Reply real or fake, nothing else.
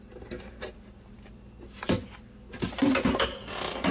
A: real